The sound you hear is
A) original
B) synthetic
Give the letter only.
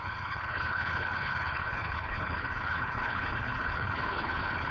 B